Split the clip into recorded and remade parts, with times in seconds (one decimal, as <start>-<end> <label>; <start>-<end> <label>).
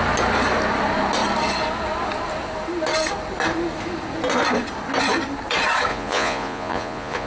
0.0-5.9 recorded; 5.9-7.3 remade